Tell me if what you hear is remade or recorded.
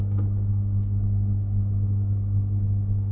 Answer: remade